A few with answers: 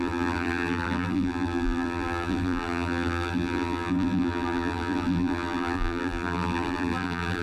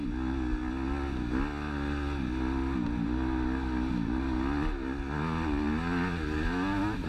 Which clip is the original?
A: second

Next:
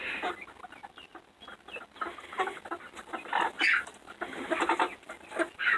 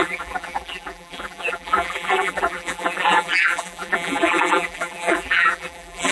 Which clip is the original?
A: first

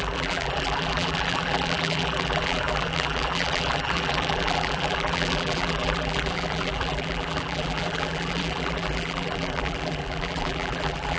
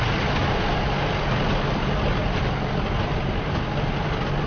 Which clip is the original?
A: second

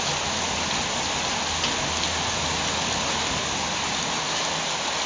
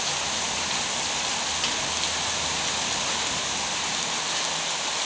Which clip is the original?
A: first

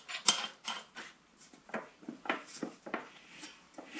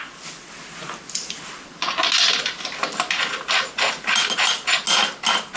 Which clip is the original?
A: second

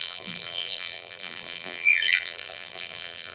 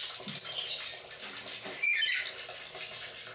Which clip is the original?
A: second